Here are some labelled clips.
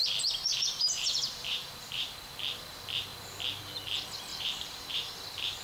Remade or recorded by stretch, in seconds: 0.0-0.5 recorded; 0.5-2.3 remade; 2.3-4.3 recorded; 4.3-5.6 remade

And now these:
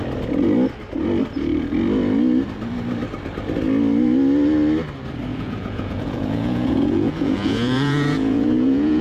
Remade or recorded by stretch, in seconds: 0.0-5.3 recorded; 5.3-9.0 remade